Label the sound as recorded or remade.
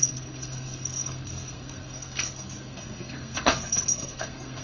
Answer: remade